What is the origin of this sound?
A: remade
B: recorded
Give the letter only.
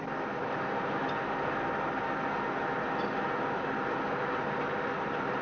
B